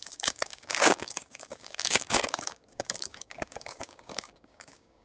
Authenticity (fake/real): fake